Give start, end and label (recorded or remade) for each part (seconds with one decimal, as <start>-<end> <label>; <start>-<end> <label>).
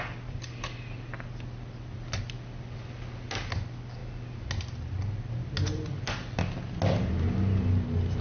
0.0-8.2 recorded